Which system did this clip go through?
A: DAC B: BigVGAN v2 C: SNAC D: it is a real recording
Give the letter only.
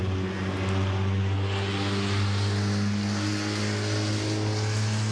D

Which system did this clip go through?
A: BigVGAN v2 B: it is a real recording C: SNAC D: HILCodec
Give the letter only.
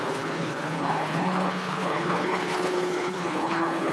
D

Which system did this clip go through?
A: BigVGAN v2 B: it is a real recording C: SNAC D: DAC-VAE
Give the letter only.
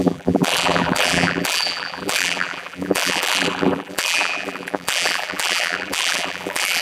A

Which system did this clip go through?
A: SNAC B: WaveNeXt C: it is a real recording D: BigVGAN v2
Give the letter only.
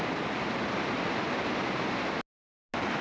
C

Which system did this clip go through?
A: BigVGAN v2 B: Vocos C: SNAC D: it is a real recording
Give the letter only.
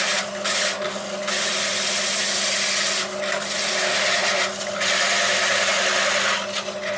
D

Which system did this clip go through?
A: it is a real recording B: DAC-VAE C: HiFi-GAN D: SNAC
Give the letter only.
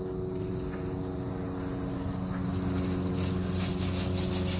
A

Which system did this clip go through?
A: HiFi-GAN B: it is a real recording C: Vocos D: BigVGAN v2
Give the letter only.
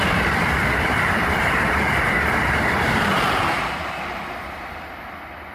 B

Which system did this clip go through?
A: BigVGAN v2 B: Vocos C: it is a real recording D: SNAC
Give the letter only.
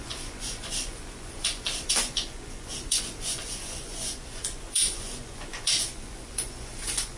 B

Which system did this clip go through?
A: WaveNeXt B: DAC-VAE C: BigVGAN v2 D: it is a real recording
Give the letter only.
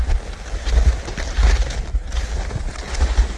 D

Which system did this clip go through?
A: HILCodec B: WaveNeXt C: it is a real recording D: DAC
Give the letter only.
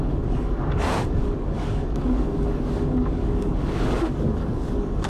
D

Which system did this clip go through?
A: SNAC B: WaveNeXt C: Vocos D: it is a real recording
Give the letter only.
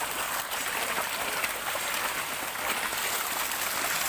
D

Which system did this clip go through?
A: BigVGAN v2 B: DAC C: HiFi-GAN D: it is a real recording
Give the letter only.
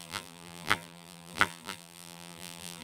A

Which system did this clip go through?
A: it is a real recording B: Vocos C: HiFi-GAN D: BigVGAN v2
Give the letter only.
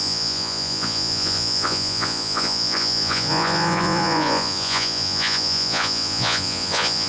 B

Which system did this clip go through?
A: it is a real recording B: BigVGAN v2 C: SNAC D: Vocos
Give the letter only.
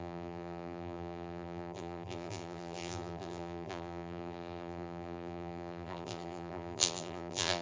B